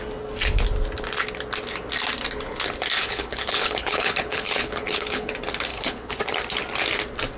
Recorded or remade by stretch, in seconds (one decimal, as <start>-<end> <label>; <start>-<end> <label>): 0.0-3.0 recorded; 3.0-5.3 remade; 5.3-5.7 recorded; 5.7-6.2 remade; 6.2-7.4 recorded